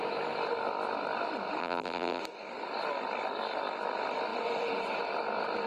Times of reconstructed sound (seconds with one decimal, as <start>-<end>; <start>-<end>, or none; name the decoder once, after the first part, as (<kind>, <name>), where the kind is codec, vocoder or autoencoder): 1.6-2.2 (vocoder, BigVGAN v2)